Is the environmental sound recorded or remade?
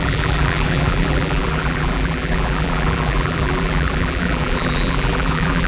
remade